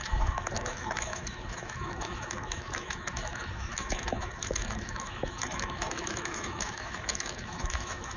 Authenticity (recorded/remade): remade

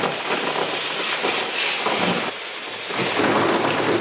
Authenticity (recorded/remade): recorded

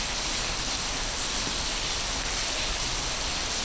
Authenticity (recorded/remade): recorded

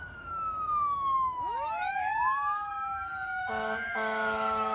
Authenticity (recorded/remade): remade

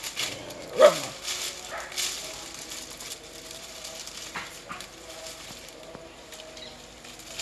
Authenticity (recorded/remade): recorded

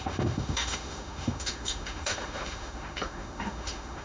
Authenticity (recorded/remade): remade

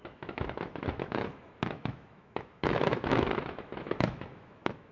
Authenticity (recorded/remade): remade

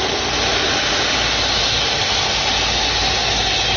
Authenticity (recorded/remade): recorded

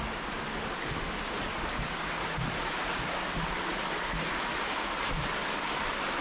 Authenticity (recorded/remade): recorded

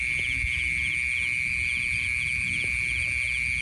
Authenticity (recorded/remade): recorded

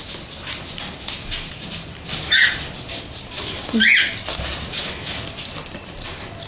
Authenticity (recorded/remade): recorded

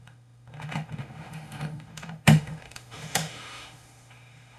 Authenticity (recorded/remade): remade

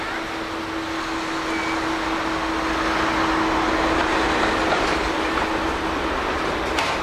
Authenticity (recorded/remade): recorded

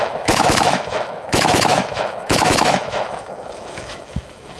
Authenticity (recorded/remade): remade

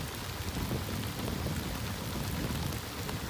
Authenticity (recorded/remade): recorded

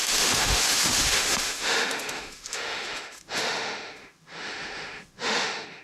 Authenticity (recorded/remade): remade